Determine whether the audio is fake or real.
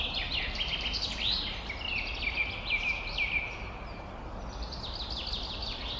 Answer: real